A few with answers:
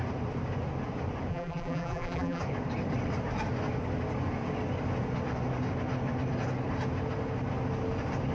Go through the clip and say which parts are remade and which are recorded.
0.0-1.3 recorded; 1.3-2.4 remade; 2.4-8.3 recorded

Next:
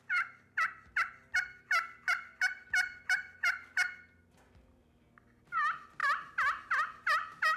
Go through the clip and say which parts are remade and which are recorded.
0.0-7.6 recorded

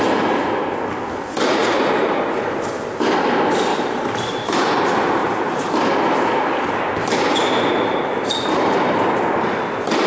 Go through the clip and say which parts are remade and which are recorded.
0.0-1.6 recorded; 1.6-2.4 remade; 2.4-3.7 recorded; 3.7-4.8 remade; 4.8-5.2 recorded; 5.2-5.9 remade; 5.9-10.1 recorded